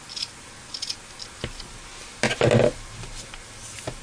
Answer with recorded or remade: recorded